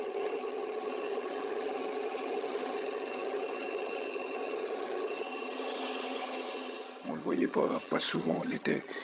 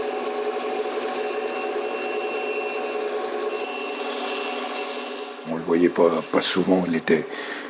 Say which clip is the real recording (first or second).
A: second